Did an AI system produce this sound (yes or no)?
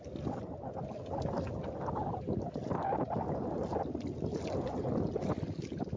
no